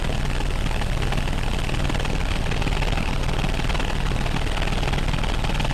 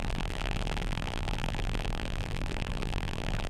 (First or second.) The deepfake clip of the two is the second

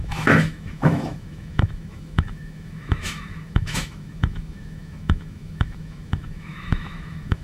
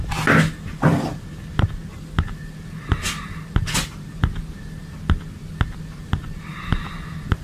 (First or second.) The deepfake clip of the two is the first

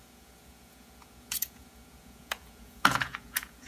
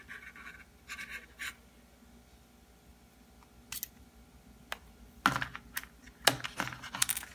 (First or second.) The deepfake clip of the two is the first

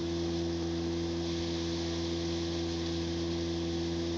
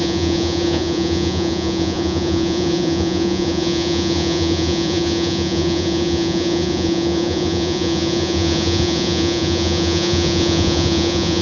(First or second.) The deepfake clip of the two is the second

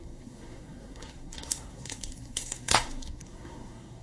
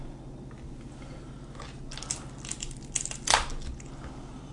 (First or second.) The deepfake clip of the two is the first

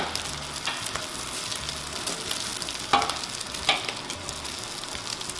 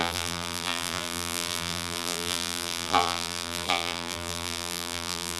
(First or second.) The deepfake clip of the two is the second